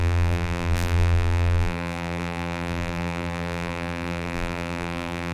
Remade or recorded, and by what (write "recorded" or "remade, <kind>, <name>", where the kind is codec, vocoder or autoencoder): remade, vocoder, BigVGAN v2